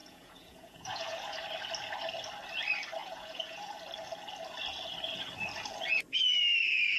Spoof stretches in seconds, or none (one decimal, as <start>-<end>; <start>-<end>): 0.0-1.4; 3.0-3.7